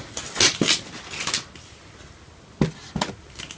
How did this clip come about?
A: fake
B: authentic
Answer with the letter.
B